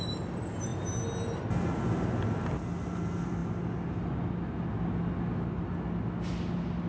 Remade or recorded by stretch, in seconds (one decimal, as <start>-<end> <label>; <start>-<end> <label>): 0.0-6.9 recorded